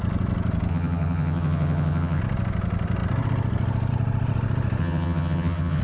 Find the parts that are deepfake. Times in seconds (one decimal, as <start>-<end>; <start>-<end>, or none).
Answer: 0.7-2.2; 4.8-5.8